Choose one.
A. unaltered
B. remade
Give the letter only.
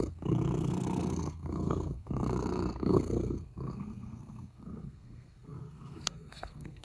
B